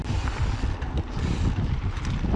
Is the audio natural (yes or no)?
yes